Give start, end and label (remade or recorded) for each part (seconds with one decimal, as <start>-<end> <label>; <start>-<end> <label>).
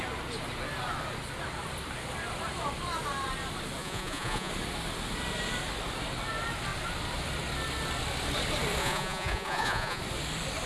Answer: 0.0-3.8 recorded; 3.8-4.5 remade; 4.5-8.8 recorded; 8.8-10.0 remade; 10.0-10.7 recorded